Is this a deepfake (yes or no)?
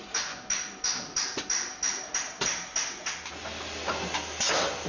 no